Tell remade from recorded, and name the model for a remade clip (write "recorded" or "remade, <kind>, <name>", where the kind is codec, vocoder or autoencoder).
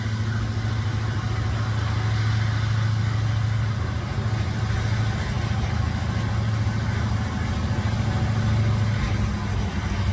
recorded